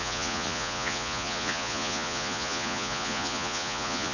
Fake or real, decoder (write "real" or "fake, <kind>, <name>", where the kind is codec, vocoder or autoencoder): fake, vocoder, Vocos